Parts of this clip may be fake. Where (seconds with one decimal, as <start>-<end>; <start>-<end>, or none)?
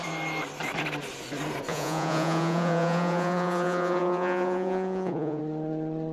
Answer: 1.7-5.4